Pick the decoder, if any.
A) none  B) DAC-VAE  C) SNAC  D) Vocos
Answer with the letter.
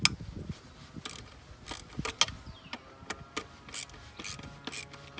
A